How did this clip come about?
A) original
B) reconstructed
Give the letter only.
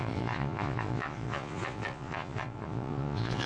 B